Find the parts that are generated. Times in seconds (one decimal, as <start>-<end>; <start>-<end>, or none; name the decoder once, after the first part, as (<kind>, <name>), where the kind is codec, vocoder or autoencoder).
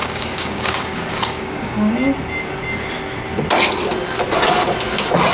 0.0-1.9 (codec, DAC)